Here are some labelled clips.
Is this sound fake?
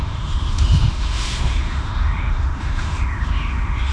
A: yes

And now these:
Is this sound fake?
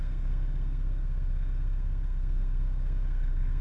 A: yes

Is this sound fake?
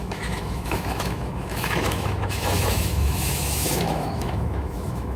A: yes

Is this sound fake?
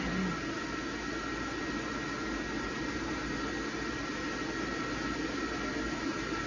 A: no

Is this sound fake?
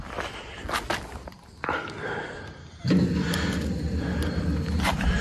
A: no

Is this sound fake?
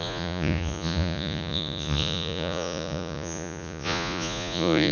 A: yes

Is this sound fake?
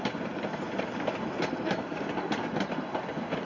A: no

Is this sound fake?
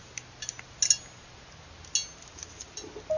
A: no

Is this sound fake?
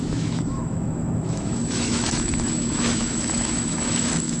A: yes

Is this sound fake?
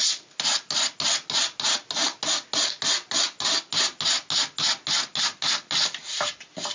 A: no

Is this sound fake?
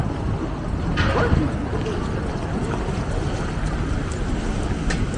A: no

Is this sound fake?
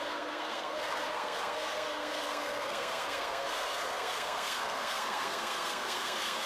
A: yes